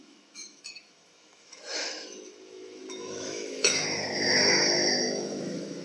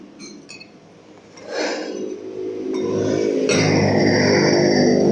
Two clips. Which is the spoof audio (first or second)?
first